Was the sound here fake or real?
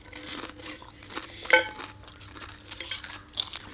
real